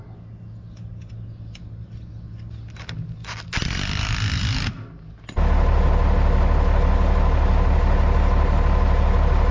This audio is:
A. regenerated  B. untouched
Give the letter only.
B